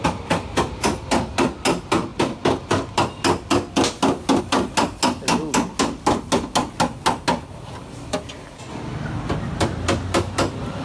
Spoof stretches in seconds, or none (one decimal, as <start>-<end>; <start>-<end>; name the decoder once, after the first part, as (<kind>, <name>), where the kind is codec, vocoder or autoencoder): none